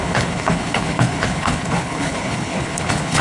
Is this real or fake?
fake